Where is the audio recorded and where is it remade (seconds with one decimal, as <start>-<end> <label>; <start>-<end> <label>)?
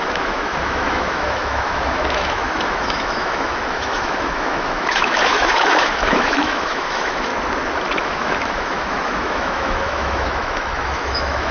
0.0-7.3 remade; 7.3-8.0 recorded; 8.0-11.5 remade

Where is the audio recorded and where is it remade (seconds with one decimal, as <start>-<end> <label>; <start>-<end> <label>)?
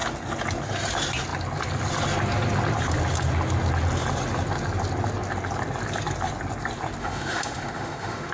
0.0-7.0 recorded; 7.0-8.3 remade